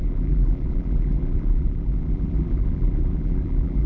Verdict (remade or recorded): remade